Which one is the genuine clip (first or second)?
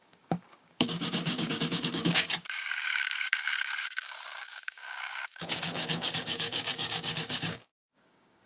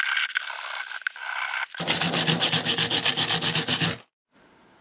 second